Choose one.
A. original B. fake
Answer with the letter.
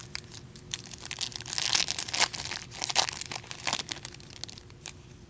A